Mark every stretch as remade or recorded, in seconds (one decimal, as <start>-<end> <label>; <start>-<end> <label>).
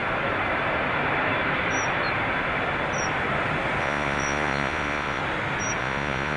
0.0-3.8 recorded; 3.8-5.2 remade; 5.2-5.8 recorded; 5.8-6.4 remade